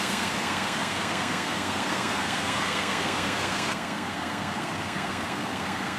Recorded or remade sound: remade